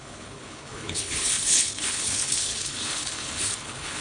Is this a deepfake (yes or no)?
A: yes